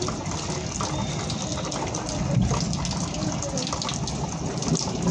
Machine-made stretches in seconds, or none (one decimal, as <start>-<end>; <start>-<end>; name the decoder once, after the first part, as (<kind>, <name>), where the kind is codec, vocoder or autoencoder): none